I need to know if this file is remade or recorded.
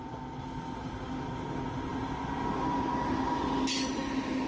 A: recorded